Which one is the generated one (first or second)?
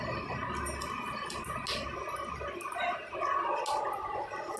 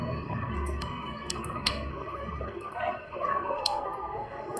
second